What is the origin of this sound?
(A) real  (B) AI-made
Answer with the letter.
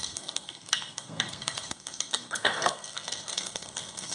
B